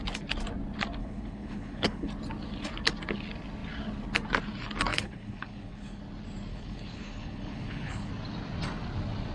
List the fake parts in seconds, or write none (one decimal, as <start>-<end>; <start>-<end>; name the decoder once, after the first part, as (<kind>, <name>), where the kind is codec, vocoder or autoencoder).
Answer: 1.0-2.1 (codec, HILCodec); 4.9-6.0; 6.5-8.1